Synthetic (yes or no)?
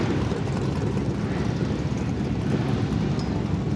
no